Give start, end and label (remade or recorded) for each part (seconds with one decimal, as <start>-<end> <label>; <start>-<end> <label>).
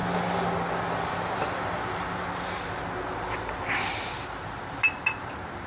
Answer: 0.0-5.7 recorded